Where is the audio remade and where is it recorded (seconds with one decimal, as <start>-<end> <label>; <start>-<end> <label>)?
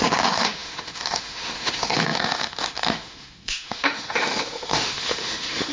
0.0-5.7 remade